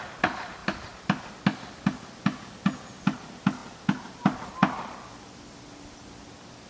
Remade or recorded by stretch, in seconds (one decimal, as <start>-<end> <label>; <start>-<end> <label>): 0.0-6.7 recorded